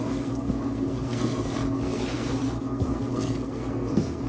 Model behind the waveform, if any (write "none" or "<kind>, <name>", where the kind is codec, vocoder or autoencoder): codec, SNAC